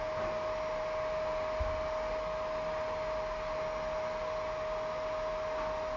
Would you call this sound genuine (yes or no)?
yes